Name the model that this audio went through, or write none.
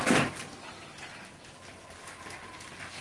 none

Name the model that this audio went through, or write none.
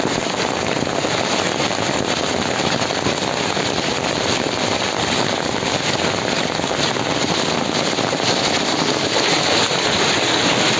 none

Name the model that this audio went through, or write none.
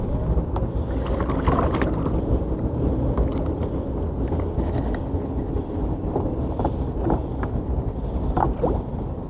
none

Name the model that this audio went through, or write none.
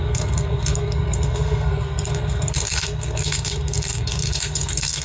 codec, SNAC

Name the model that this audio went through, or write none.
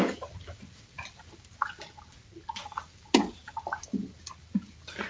none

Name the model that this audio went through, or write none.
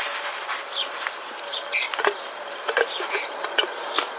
none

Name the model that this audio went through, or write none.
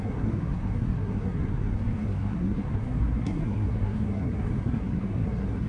codec, SNAC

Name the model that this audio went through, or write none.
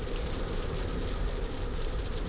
vocoder, BigVGAN v2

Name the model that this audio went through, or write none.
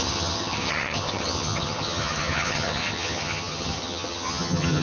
vocoder, HiFi-GAN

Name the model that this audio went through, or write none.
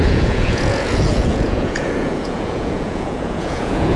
vocoder, Vocos